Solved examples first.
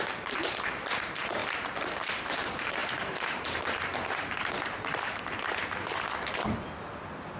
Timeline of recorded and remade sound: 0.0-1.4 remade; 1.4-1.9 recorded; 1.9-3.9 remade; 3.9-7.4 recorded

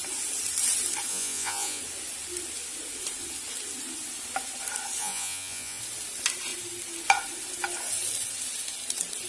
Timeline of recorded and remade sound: 0.0-1.1 recorded; 1.1-1.8 remade; 1.8-5.0 recorded; 5.0-5.8 remade; 5.8-9.3 recorded

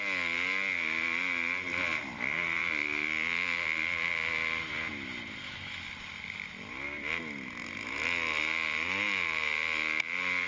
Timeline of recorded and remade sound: 0.0-5.4 recorded; 5.4-5.9 remade; 5.9-10.5 recorded

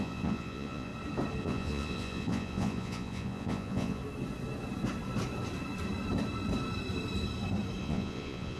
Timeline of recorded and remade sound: 0.0-0.9 remade; 0.9-1.4 recorded; 1.4-4.0 remade; 4.0-7.8 recorded; 7.8-8.6 remade